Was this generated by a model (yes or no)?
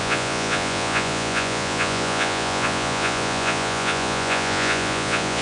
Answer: yes